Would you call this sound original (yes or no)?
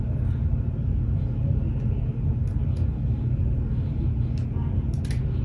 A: yes